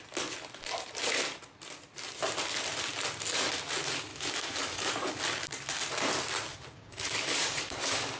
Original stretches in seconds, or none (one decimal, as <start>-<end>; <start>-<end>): 0.0-4.1; 5.2-6.5